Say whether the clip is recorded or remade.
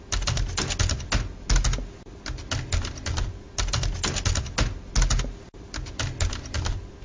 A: recorded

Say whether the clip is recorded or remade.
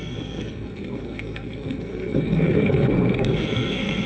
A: remade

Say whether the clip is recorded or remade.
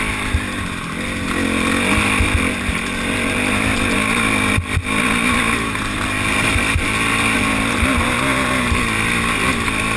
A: recorded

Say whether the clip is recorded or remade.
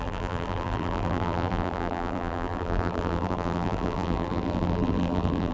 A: remade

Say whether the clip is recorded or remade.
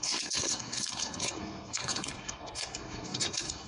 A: remade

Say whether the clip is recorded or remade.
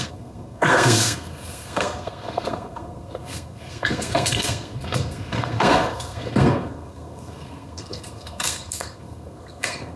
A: remade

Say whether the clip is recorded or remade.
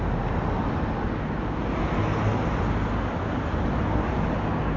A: recorded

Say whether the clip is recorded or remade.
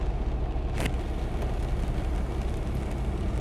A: recorded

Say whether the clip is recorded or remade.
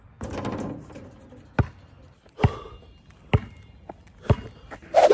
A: recorded